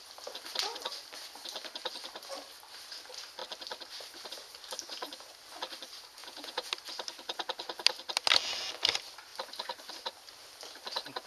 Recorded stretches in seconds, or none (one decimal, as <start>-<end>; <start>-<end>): 0.0-6.2; 6.7-11.3